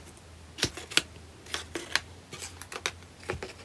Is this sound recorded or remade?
recorded